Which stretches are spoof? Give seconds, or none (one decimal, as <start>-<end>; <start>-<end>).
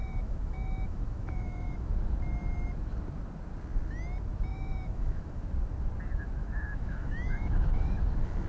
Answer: 0.0-1.9; 4.5-5.4; 6.4-8.0